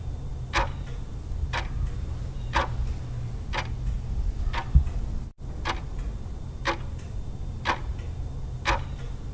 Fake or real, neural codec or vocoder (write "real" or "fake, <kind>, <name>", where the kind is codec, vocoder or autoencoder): real